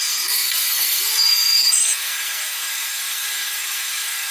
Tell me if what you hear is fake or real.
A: fake